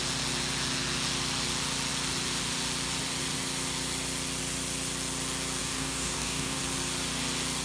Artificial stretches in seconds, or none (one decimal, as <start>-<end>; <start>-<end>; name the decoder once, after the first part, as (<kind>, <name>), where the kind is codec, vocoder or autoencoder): 5.6-6.6 (codec, DAC)